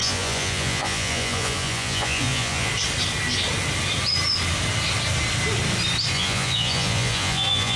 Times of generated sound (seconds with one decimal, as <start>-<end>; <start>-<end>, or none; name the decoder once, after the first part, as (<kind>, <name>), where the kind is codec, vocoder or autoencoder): 0.0-2.7 (vocoder, Vocos); 6.1-7.8